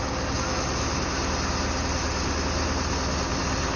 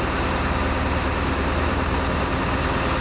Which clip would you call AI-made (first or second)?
second